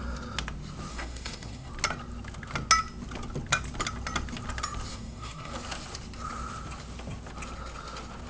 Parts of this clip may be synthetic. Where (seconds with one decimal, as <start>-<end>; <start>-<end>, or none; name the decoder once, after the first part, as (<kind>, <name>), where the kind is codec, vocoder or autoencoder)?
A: 0.9-1.7 (codec, SNAC); 4.9-5.5